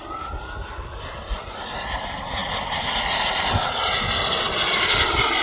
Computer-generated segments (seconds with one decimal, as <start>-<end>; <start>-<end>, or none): none